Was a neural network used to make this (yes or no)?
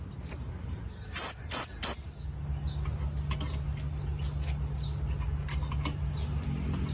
no